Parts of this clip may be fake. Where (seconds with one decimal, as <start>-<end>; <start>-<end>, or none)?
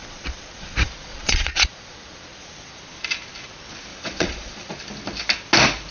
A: 0.0-2.8; 3.9-4.8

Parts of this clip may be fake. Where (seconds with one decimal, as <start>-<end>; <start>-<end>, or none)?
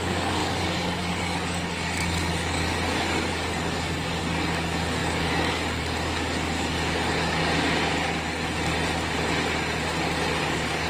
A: 0.0-7.4; 10.4-10.9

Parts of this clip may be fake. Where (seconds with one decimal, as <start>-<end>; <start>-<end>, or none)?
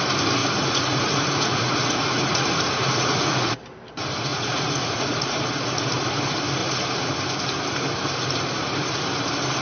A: 0.4-3.6; 4.3-5.4; 6.6-7.1